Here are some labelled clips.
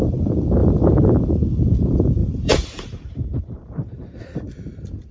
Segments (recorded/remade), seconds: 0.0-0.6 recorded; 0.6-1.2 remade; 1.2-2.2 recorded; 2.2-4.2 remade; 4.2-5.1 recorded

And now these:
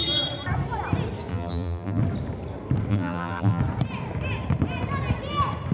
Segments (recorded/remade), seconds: 0.0-1.3 recorded; 1.3-2.0 remade; 2.0-2.9 recorded; 2.9-3.6 remade; 3.6-5.7 recorded

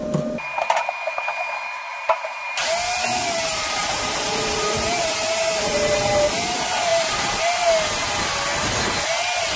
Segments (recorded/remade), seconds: 0.0-1.9 recorded; 1.9-2.6 remade; 2.6-3.8 recorded; 3.8-6.1 remade; 6.1-6.9 recorded; 6.9-7.4 remade; 7.4-9.6 recorded

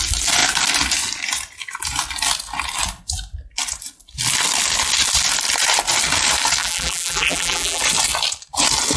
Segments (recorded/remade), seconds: 0.0-6.6 recorded; 6.6-7.8 remade; 7.8-9.0 recorded

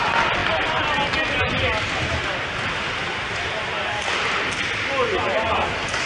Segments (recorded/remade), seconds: 0.0-6.1 recorded